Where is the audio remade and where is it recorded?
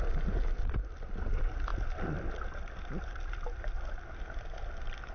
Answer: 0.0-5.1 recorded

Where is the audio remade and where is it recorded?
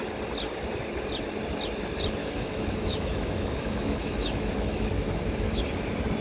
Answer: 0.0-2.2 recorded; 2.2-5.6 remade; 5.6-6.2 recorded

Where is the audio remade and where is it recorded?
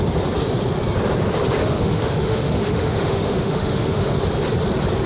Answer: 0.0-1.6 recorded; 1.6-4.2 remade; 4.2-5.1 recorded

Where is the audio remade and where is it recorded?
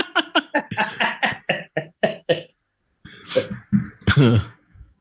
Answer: 0.0-1.8 recorded; 1.8-2.5 remade; 2.5-4.1 recorded; 4.1-5.0 remade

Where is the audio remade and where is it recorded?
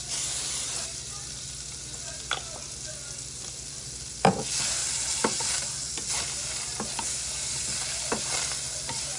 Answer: 0.0-9.2 recorded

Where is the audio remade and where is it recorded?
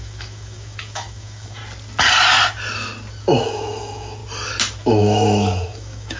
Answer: 0.0-1.6 remade; 1.6-3.2 recorded; 3.2-4.2 remade; 4.2-4.8 recorded; 4.8-6.2 remade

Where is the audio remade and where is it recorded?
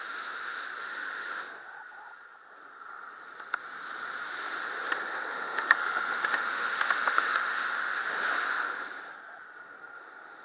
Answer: 0.0-0.8 recorded; 0.8-1.3 remade; 1.3-5.3 recorded; 5.3-7.9 remade; 7.9-10.4 recorded